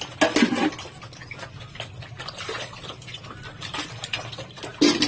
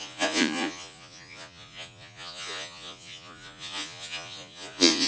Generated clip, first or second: second